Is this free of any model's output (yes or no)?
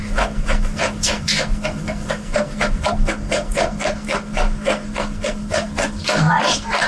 no